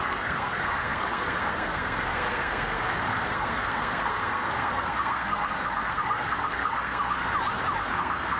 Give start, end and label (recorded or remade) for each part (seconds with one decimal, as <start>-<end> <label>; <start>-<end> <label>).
0.0-7.2 remade; 7.2-7.8 recorded; 7.8-8.4 remade